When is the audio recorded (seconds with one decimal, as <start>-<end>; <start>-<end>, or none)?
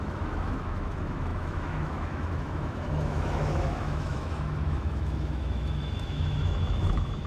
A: none